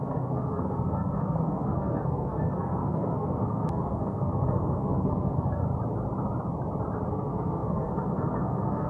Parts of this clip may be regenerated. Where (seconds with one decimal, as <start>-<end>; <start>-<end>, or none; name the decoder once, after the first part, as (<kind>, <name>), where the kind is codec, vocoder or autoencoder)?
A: 0.0-5.6 (codec, SNAC); 7.1-8.9